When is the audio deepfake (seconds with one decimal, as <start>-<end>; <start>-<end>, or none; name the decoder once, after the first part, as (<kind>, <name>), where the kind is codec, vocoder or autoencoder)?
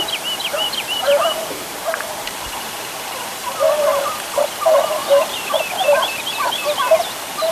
0.5-2.9 (vocoder, BigVGAN v2); 5.0-5.5